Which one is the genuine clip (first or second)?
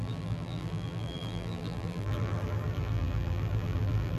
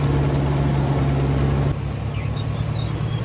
second